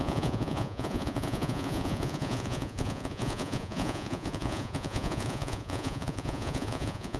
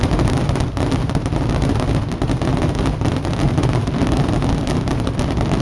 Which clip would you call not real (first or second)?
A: first